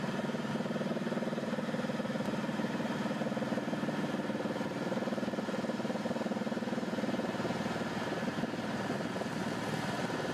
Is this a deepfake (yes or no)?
yes